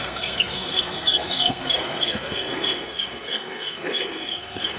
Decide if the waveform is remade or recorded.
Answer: remade